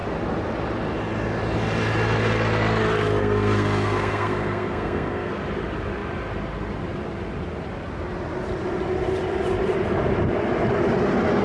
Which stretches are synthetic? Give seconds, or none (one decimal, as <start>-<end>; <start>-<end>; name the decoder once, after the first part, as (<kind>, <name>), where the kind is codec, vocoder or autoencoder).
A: 3.2-5.3 (codec, SNAC)

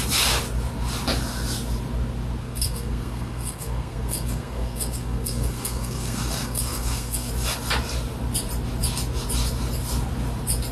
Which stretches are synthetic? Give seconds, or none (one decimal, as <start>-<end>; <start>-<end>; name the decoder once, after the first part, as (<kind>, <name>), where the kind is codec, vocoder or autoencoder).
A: 2.4-7.3 (codec, SNAC)

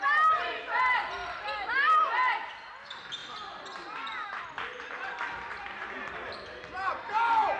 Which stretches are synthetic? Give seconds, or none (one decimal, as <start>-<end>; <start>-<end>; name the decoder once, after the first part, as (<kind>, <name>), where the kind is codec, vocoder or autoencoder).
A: none

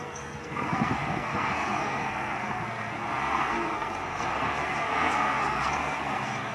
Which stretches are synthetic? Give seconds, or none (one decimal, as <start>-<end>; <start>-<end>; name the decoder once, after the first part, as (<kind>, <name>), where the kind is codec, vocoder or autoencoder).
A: 0.0-6.5 (codec, SNAC)

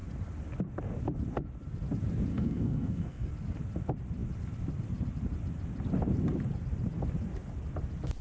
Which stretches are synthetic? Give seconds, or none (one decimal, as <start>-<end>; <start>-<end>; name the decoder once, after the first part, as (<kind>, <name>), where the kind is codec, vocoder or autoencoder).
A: 2.3-3.3 (codec, SNAC)

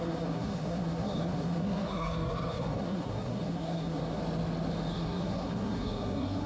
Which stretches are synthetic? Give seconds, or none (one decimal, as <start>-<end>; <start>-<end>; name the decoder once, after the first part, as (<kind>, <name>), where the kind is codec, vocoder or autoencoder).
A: 0.0-4.2 (codec, SNAC); 4.9-6.5